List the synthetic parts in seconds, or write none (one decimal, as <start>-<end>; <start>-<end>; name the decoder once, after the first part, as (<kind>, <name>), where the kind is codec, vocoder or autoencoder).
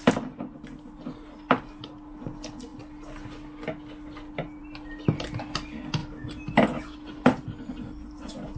none